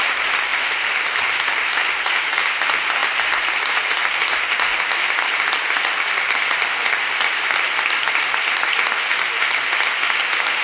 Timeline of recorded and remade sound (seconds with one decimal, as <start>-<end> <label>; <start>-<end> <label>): 0.0-10.6 recorded